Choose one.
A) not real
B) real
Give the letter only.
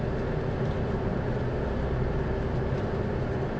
B